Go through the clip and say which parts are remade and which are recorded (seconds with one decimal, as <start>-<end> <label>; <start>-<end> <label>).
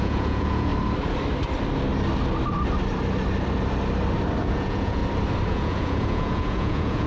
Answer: 0.0-0.7 remade; 0.7-4.4 recorded; 4.4-5.0 remade; 5.0-5.5 recorded; 5.5-7.1 remade